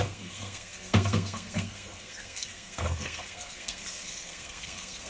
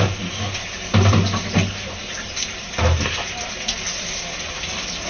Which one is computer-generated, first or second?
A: first